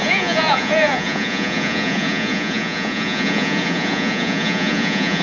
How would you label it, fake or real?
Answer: fake